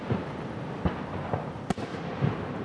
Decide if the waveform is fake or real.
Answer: real